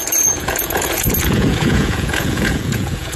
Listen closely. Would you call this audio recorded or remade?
remade